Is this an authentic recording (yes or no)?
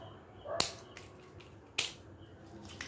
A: yes